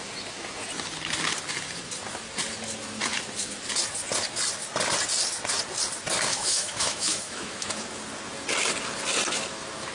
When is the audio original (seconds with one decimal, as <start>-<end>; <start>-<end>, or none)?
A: 0.0-6.3; 7.7-9.9